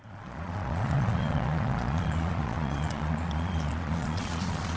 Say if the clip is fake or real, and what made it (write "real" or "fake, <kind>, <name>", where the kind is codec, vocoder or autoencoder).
fake, vocoder, Vocos